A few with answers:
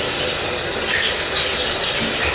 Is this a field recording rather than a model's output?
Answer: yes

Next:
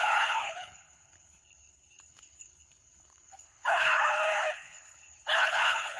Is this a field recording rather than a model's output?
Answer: no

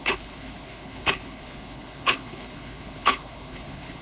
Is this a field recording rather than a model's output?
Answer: no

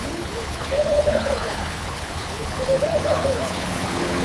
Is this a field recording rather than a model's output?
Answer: no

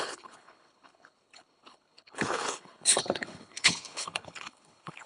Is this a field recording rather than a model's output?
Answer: no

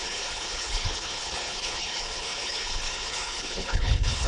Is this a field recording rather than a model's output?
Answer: no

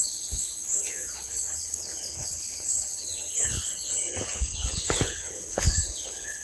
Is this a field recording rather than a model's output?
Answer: no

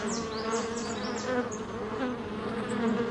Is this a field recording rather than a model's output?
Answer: yes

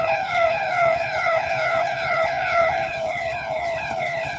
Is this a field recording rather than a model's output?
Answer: no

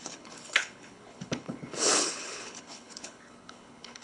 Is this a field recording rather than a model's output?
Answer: no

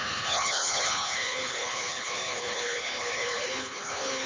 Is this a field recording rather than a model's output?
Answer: no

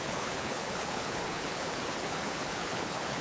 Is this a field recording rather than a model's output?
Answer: no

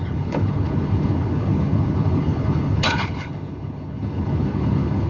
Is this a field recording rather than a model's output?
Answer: no